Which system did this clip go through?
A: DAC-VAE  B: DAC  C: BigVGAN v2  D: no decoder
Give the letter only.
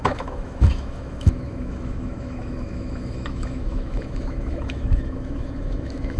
A